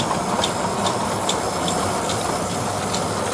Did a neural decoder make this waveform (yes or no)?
no